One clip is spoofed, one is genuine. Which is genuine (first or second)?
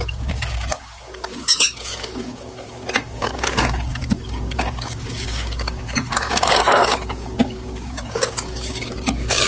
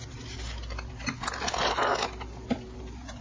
second